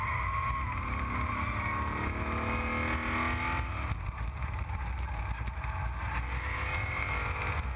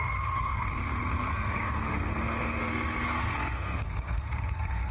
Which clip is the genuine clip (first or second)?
first